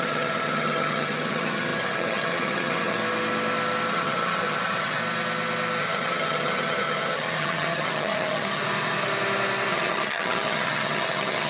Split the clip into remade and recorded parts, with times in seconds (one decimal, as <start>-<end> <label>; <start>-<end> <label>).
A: 0.0-3.0 remade; 3.0-3.9 recorded; 3.9-5.0 remade; 5.0-5.8 recorded; 5.8-8.6 remade; 8.6-9.7 recorded; 9.7-11.5 remade